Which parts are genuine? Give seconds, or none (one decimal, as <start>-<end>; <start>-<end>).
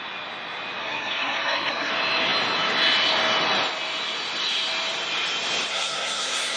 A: 0.0-0.8; 1.9-5.7